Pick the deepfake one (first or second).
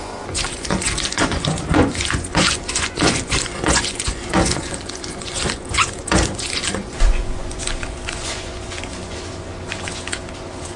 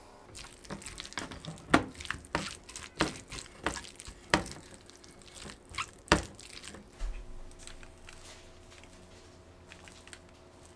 first